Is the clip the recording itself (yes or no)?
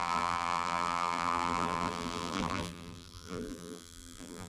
no